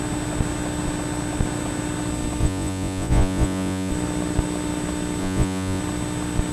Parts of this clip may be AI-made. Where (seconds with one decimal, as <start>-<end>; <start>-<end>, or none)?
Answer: 2.4-3.9; 5.2-5.8